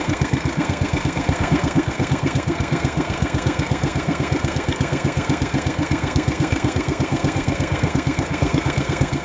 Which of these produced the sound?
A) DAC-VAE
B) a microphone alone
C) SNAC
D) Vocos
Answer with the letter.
C